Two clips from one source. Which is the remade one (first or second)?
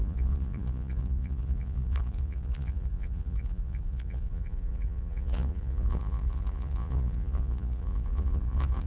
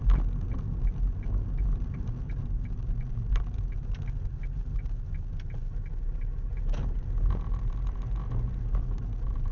first